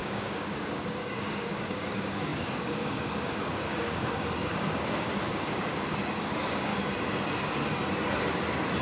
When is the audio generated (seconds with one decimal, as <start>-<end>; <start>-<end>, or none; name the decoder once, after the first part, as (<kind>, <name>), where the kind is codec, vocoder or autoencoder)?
0.0-6.7 (codec, DAC)